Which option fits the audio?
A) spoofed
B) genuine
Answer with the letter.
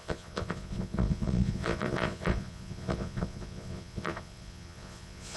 A